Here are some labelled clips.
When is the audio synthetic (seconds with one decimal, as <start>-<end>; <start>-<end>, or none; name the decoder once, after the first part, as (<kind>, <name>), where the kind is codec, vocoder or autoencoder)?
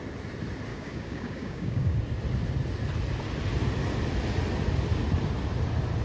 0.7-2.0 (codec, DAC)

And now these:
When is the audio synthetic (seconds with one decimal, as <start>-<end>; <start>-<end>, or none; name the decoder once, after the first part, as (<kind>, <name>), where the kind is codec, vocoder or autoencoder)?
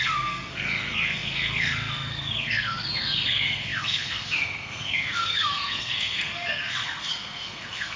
0.0-8.0 (codec, SNAC)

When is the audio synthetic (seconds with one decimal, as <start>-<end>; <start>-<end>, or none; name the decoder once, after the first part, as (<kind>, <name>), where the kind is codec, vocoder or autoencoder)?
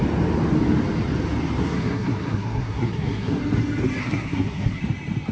1.6-3.4 (codec, SNAC); 4.0-4.8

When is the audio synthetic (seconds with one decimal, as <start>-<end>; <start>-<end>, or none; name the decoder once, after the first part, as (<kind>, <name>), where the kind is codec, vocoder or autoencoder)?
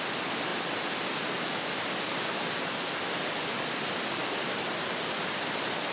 none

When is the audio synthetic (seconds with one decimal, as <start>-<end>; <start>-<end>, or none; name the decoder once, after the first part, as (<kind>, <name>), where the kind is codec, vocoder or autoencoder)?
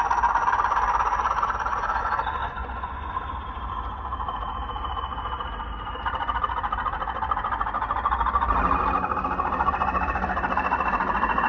2.4-3.1 (vocoder, Vocos)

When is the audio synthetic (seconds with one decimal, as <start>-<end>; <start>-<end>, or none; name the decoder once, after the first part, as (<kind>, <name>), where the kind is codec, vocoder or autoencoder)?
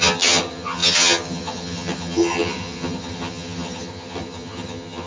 0.0-5.1 (vocoder, HiFi-GAN)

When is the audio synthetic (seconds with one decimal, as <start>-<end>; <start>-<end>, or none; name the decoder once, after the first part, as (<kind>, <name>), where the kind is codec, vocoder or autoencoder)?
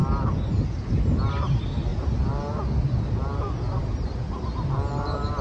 none